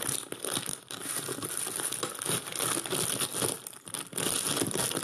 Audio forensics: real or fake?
real